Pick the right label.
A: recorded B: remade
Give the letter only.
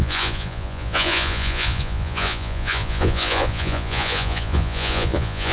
B